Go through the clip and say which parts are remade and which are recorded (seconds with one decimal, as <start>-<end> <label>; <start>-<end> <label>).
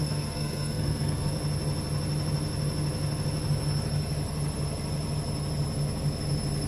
0.0-1.3 remade; 1.3-6.7 recorded